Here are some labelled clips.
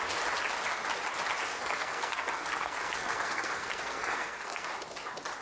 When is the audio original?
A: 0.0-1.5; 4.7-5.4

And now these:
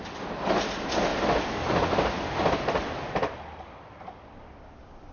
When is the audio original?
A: 0.0-5.1

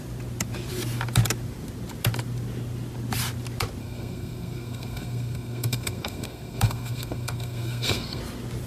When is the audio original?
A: 0.0-3.8; 8.2-8.7

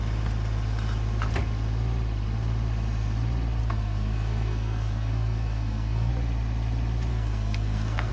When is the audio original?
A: 0.0-3.6; 6.1-7.1

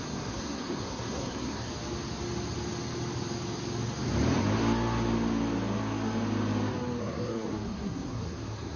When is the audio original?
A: 1.7-7.0

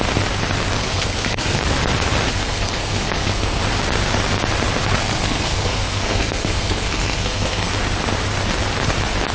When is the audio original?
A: 0.0-0.8; 1.6-2.3; 3.6-5.0; 7.7-9.3